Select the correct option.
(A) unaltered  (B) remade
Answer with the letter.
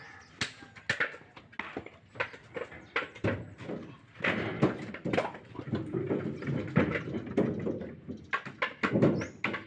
A